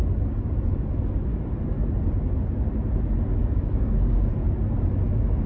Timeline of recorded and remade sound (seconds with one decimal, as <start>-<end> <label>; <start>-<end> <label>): 0.0-3.4 recorded; 3.4-4.3 remade; 4.3-5.5 recorded